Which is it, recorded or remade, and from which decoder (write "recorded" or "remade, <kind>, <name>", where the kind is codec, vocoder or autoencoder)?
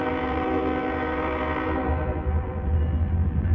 remade, vocoder, BigVGAN v2